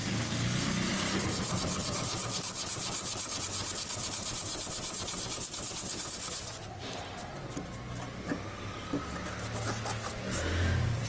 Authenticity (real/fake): real